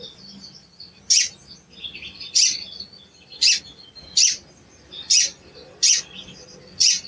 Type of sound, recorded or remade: recorded